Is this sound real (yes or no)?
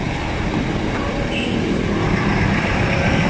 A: yes